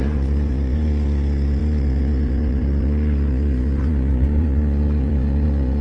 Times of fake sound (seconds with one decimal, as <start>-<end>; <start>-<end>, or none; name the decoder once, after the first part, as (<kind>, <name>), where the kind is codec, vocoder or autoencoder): 0.0-5.8 (vocoder, Vocos)